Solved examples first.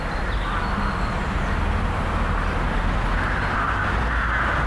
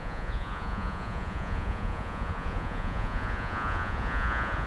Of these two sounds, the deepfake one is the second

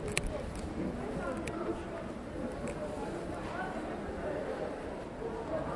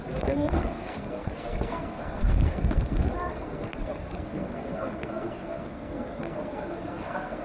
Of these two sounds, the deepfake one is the second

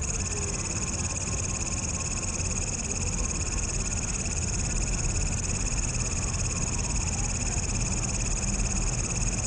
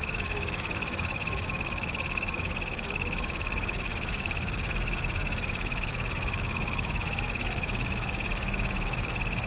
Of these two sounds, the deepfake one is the second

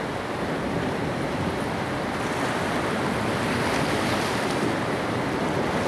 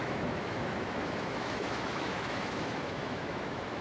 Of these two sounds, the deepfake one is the second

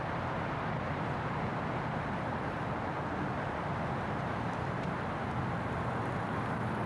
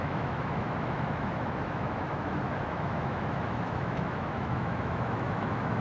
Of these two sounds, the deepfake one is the second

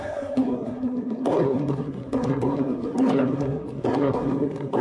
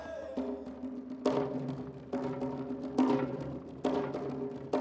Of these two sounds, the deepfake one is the first